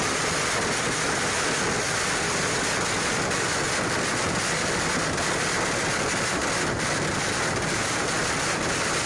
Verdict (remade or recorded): recorded